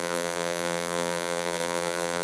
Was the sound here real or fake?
fake